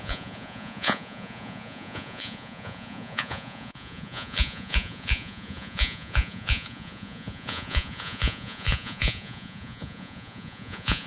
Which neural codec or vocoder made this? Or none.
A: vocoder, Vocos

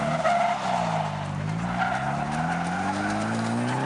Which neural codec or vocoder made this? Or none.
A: none